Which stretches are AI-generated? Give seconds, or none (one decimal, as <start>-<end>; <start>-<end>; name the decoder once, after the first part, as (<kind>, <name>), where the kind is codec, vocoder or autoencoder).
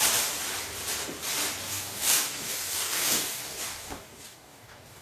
1.7-5.0 (codec, DAC)